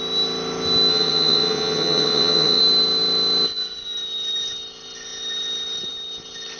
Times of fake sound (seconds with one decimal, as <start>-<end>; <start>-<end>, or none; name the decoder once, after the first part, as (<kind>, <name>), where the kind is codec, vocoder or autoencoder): 0.9-2.6 (vocoder, HiFi-GAN)